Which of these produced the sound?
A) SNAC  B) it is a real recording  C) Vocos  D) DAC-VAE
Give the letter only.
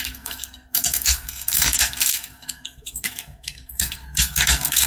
A